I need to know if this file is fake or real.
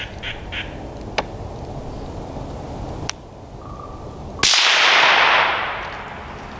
real